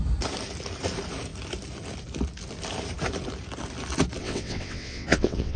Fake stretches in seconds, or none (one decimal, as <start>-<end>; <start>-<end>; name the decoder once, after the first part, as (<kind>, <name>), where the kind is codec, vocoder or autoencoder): 4.2-5.6 (vocoder, WaveNeXt)

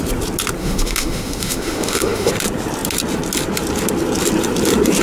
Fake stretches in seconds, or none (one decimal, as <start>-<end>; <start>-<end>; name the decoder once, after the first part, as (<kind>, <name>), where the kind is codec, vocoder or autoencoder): 0.6-2.3 (autoencoder, DAC-VAE)

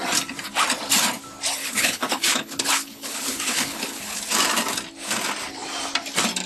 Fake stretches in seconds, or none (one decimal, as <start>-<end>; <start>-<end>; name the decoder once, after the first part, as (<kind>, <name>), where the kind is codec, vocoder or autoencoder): 1.6-4.2 (codec, HILCodec)

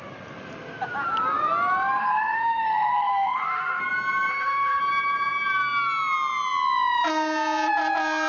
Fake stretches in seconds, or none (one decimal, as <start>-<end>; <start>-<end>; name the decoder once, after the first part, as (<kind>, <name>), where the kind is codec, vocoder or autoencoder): 2.0-3.8 (autoencoder, DAC-VAE); 4.3-4.8

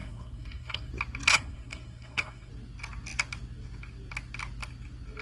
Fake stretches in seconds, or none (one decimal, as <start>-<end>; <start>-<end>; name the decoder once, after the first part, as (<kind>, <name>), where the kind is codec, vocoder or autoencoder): 0.0-0.9 (codec, SNAC); 1.3-2.5

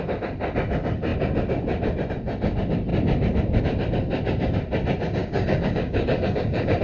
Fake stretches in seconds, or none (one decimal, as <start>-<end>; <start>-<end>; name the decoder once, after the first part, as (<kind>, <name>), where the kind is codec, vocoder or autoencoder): 5.2-6.8 (codec, DAC)